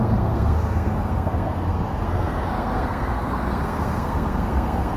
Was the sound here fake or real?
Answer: fake